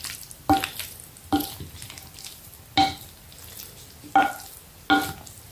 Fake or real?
real